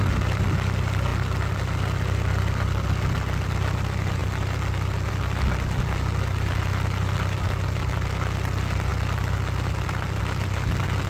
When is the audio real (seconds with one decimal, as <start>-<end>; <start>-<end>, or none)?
0.0-11.1